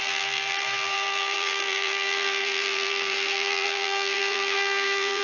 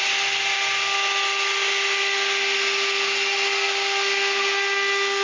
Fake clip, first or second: first